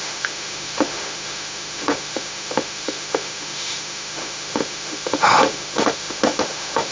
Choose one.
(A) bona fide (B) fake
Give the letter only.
B